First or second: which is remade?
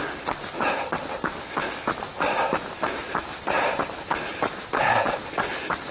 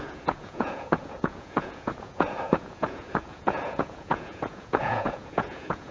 second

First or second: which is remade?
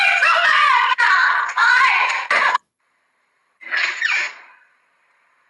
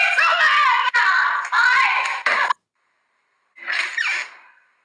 first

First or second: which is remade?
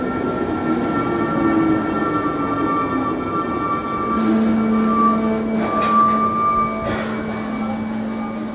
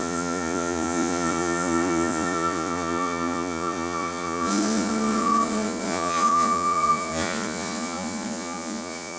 second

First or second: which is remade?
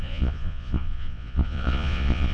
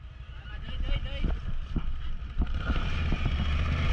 first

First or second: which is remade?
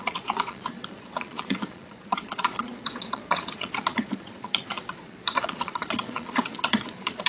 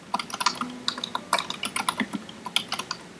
first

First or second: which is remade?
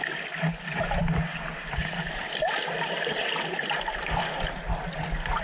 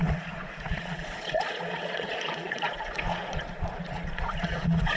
second